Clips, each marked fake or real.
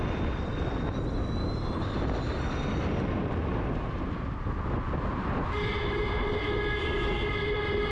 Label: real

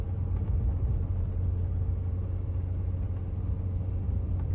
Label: real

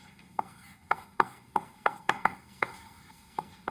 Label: fake